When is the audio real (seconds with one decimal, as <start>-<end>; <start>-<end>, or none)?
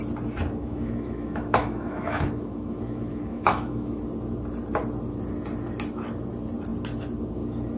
0.0-0.6; 4.0-7.8